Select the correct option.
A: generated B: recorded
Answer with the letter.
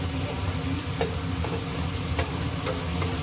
B